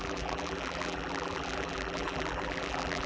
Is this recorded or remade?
remade